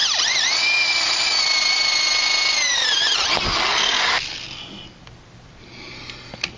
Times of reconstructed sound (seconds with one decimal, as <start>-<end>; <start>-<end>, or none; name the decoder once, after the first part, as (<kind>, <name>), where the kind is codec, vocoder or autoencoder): none